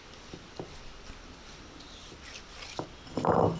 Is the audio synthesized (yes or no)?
no